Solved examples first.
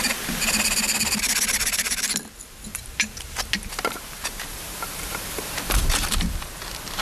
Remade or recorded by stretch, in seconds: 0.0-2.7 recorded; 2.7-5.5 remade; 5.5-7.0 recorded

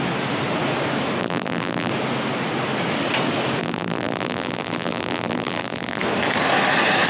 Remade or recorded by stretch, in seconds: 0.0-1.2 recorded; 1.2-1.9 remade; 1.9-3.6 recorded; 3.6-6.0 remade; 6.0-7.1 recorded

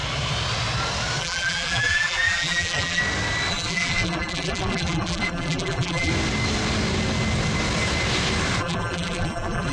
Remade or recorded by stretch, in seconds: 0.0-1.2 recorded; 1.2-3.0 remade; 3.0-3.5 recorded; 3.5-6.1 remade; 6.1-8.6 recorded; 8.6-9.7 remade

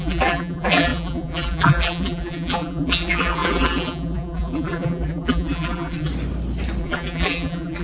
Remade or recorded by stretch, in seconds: 0.0-6.1 remade; 6.1-6.8 recorded; 6.8-7.8 remade

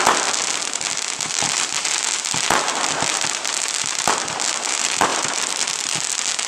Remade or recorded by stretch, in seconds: 0.0-5.1 recorded; 5.1-5.7 remade; 5.7-6.5 recorded

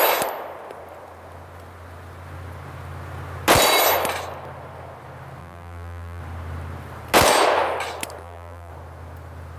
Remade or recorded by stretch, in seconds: 0.0-5.4 recorded; 5.4-6.2 remade; 6.2-8.2 recorded; 8.2-8.7 remade; 8.7-9.6 recorded